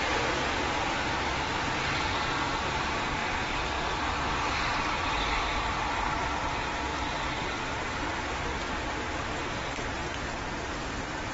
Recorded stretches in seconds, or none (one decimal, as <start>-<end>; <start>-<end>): 0.0-3.2; 6.4-6.9; 9.8-11.3